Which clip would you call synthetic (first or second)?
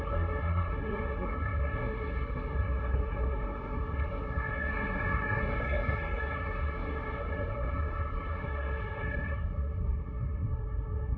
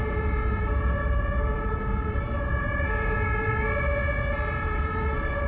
first